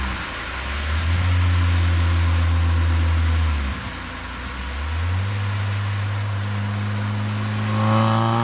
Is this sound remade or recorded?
recorded